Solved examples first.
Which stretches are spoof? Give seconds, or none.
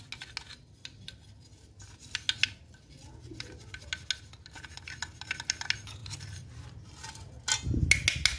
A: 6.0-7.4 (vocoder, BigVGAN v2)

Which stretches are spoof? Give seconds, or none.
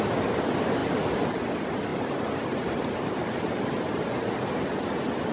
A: 1.9-4.8 (vocoder, BigVGAN v2)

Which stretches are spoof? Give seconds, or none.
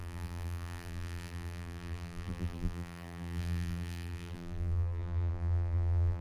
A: 0.0-6.2 (vocoder, BigVGAN v2)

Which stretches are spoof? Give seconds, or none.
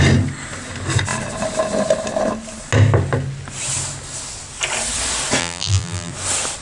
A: 5.4-6.1 (vocoder, BigVGAN v2)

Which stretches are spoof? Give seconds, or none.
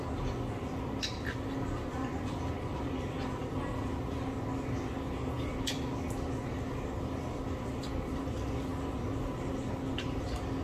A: none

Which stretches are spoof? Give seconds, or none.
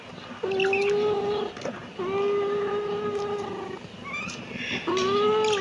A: none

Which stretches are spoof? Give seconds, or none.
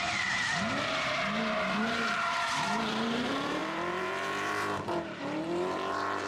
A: 0.0-6.3 (vocoder, BigVGAN v2)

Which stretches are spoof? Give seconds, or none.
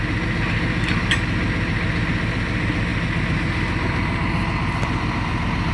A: none